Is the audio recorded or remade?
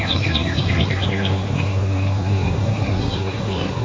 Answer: remade